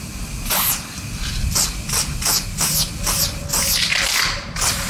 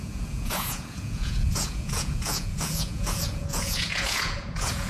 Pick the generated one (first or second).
second